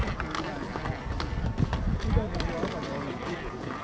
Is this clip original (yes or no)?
yes